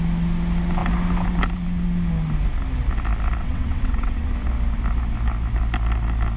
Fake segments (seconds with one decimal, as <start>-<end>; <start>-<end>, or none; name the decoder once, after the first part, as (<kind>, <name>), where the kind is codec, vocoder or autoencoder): 3.4-4.3 (vocoder, WaveNeXt)

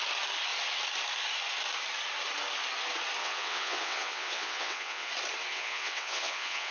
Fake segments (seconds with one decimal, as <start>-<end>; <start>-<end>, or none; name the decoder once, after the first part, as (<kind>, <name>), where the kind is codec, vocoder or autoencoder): 3.2-5.1 (vocoder, WaveNeXt); 5.5-6.7

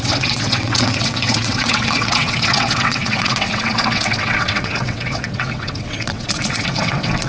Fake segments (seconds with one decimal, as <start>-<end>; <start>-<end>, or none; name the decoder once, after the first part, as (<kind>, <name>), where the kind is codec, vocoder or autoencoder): 0.0-7.3 (vocoder, WaveNeXt)

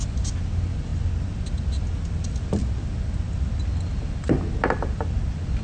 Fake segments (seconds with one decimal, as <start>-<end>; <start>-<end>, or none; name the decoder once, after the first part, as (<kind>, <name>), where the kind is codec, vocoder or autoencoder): none